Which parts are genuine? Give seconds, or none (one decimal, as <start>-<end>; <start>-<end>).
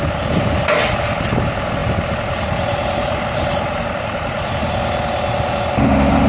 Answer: 0.0-6.3